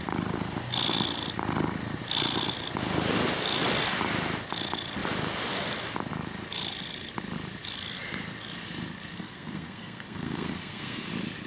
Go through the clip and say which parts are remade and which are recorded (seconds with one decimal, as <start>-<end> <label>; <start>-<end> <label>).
0.0-9.1 recorded; 9.1-11.1 remade; 11.1-11.5 recorded